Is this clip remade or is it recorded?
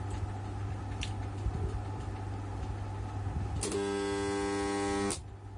recorded